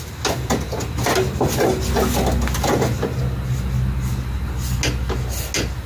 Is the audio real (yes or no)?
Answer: yes